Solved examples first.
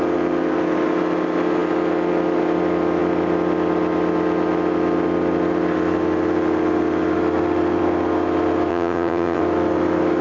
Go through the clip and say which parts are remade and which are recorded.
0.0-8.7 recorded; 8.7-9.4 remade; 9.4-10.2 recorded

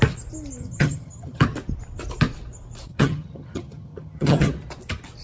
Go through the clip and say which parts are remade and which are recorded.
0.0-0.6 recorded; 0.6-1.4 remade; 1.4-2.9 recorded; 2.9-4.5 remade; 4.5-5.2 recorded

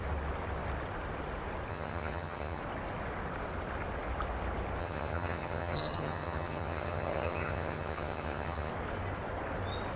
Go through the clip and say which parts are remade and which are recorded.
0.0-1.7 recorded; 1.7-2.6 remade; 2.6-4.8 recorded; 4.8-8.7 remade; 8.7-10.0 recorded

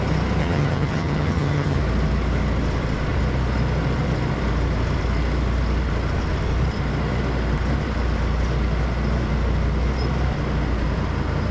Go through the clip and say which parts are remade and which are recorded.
0.0-0.4 recorded; 0.4-1.8 remade; 1.8-11.5 recorded